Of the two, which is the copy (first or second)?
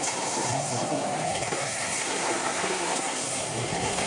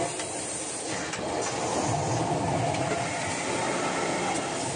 first